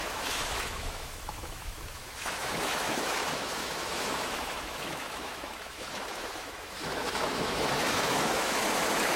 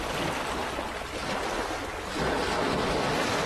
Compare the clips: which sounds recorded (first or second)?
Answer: second